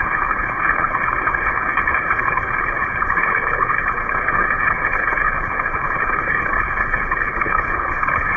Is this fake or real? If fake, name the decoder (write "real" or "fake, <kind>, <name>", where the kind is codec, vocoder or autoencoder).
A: fake, codec, HILCodec